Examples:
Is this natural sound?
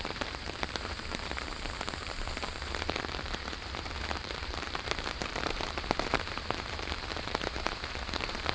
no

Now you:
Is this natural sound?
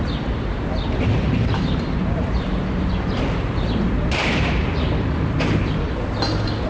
no